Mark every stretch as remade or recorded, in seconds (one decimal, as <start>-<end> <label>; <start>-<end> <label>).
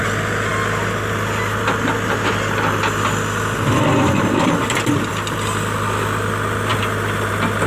0.0-7.7 recorded